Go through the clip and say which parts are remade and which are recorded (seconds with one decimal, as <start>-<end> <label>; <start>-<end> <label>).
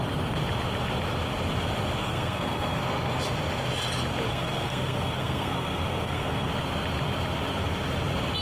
0.0-2.0 recorded; 2.0-2.8 remade; 2.8-4.3 recorded; 4.3-6.5 remade; 6.5-8.4 recorded